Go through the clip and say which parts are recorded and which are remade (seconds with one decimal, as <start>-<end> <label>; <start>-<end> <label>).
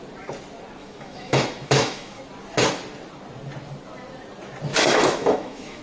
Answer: 0.0-0.8 recorded; 0.8-2.2 remade; 2.2-4.7 recorded; 4.7-5.8 remade